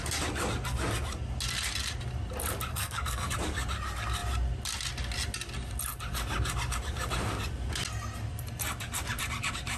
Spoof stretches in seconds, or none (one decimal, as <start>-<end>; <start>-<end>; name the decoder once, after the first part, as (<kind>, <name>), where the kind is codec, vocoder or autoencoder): 2.7-3.3 (codec, SNAC)